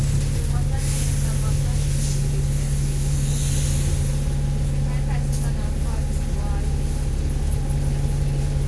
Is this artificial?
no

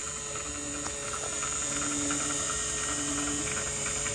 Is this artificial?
no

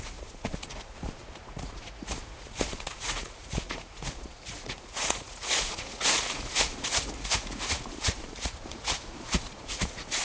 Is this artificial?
yes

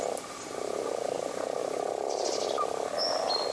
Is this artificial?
no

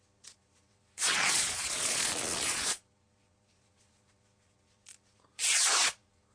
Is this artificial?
yes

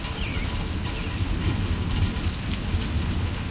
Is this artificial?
no